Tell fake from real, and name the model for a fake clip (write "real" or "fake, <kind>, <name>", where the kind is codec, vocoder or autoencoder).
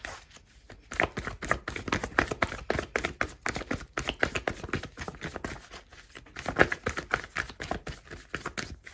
real